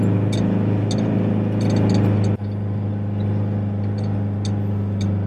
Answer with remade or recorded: recorded